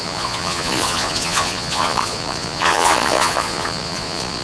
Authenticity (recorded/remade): remade